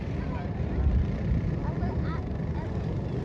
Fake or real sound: real